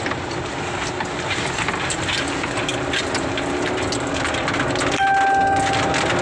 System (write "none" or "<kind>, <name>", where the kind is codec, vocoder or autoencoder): none